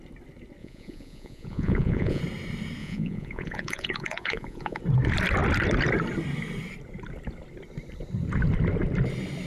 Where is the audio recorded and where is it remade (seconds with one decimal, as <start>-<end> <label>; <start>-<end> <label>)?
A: 0.0-0.6 recorded; 0.6-2.2 remade; 2.2-2.8 recorded; 2.8-4.8 remade; 4.8-9.5 recorded